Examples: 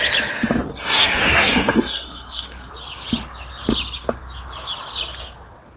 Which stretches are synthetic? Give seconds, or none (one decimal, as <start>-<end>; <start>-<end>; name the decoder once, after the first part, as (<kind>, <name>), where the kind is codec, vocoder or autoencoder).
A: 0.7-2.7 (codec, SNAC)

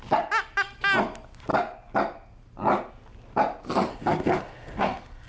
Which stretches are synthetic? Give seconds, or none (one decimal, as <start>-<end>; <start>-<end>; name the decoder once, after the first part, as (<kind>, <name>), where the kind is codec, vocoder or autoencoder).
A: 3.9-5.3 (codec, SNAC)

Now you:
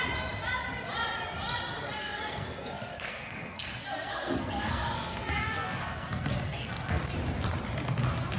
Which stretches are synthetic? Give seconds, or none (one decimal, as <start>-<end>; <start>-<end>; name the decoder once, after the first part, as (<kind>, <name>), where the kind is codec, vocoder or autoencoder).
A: 2.0-7.0 (codec, SNAC)

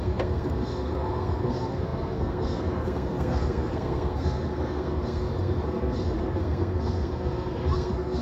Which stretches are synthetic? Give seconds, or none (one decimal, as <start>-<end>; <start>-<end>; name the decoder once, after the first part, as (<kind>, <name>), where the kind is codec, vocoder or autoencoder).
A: 0.0-8.2 (codec, SNAC)

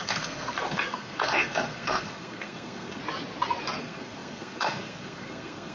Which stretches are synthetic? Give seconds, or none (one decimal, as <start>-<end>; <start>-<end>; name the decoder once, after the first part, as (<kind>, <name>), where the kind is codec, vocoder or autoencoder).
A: 0.0-3.0 (codec, SNAC); 3.8-5.7

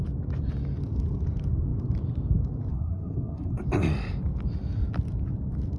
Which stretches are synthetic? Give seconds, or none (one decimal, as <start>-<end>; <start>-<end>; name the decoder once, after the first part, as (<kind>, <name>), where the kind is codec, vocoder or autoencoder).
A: 2.7-3.6 (codec, SNAC)

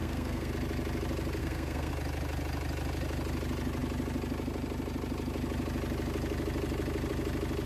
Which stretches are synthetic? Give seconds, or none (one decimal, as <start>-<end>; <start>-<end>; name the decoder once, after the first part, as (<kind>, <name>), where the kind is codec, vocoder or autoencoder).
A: 0.0-0.5 (codec, SNAC); 1.4-1.9